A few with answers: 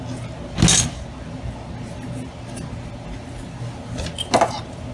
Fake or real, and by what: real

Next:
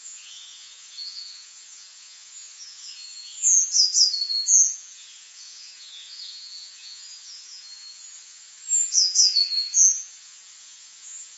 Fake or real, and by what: fake, vocoder, Vocos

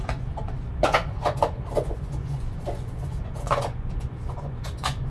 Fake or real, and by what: fake, vocoder, Vocos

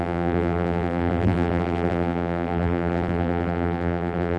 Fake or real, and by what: fake, vocoder, BigVGAN v2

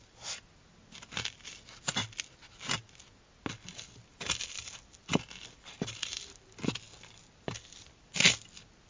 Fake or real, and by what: real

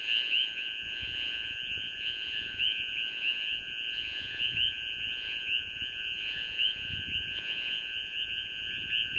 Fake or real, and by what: fake, vocoder, Vocos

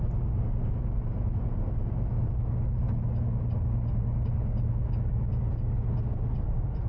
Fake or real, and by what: real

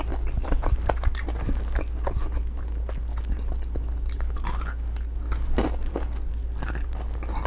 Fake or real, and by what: real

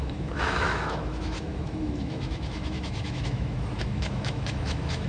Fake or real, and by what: fake, autoencoder, DAC-VAE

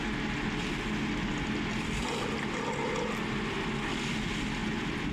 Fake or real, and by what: real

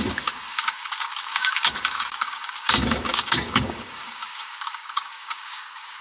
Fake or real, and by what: fake, codec, DAC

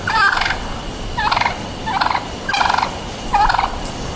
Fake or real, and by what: real